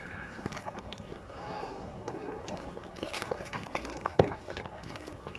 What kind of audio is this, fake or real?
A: fake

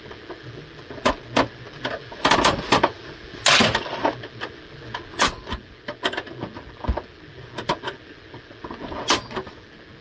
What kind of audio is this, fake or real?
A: real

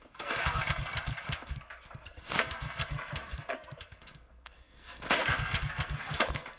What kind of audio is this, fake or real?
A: fake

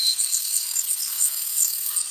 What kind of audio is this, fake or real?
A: fake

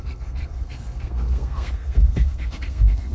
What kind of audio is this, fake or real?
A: fake